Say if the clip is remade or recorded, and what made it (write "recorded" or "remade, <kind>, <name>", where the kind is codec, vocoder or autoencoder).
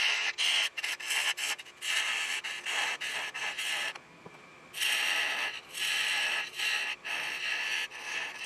remade, vocoder, BigVGAN v2